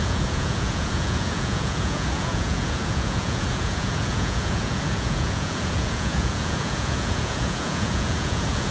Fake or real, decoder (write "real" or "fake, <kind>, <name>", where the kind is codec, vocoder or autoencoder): fake, vocoder, Vocos